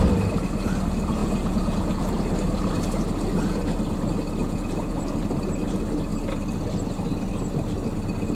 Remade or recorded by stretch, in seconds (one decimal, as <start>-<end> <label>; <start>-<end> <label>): 0.0-1.2 recorded; 1.2-2.1 remade; 2.1-4.4 recorded; 4.4-5.0 remade; 5.0-8.3 recorded